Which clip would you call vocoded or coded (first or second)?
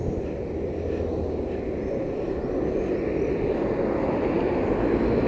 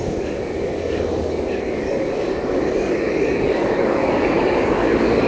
second